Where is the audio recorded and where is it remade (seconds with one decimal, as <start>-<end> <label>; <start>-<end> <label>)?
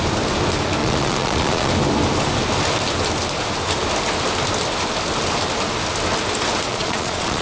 0.0-0.8 recorded; 0.8-1.7 remade; 1.7-6.7 recorded; 6.7-7.4 remade